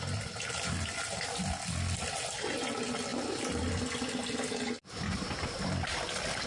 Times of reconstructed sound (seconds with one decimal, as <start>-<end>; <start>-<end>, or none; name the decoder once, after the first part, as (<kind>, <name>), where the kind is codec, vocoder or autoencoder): none